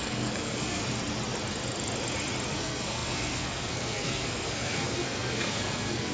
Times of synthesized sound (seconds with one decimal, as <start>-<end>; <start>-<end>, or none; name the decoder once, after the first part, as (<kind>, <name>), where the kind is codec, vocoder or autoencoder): 0.0-0.8 (codec, SNAC); 2.5-6.1